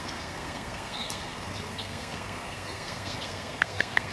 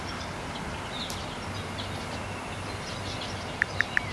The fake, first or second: first